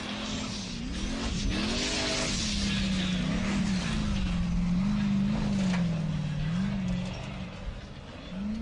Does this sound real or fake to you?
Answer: real